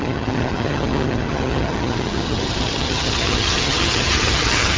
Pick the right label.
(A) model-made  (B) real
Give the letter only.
A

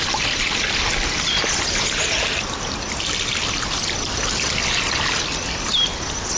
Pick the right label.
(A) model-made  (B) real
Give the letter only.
B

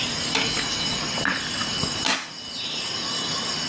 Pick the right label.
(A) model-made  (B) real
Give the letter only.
B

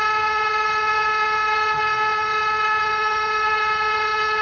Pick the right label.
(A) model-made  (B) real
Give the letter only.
A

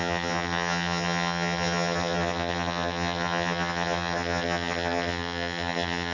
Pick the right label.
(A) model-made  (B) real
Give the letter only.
A